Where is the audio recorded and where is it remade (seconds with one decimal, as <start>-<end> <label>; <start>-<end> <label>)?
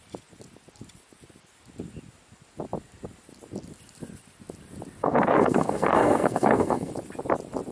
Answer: 0.0-5.0 recorded; 5.0-6.9 remade; 6.9-7.7 recorded